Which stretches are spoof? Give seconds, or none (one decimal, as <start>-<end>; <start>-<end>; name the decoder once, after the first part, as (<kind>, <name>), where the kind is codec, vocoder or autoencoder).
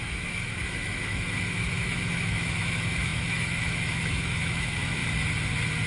0.0-5.0 (autoencoder, DAC-VAE)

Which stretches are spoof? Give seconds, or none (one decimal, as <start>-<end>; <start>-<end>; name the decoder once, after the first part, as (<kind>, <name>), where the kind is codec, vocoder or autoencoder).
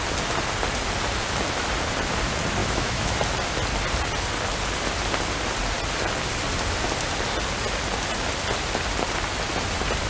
2.6-3.2 (autoencoder, DAC-VAE)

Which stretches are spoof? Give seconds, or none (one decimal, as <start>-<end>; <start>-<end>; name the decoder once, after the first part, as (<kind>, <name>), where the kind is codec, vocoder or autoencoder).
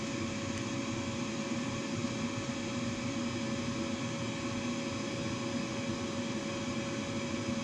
none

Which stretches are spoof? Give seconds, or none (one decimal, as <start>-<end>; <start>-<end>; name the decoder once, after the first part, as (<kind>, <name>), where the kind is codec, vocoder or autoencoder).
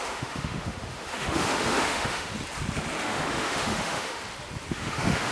0.0-2.3 (autoencoder, DAC-VAE); 3.0-4.2; 4.7-5.3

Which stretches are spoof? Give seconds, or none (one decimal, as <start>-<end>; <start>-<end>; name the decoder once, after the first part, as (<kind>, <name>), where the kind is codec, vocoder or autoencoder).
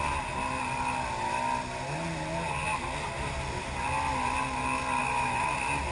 5.0-5.5 (autoencoder, DAC-VAE)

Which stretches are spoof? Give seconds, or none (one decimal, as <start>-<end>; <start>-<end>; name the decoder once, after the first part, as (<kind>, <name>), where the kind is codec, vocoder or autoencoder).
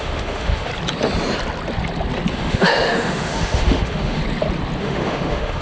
0.0-0.7 (autoencoder, DAC-VAE); 2.3-4.2; 4.8-5.6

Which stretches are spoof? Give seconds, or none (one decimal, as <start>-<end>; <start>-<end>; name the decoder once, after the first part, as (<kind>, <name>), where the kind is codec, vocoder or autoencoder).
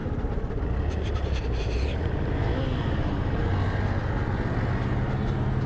none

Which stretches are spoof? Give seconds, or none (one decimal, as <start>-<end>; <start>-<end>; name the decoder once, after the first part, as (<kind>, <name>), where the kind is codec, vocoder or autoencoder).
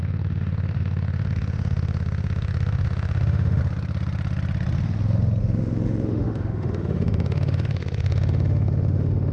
0.0-3.6 (autoencoder, DAC-VAE); 5.4-9.3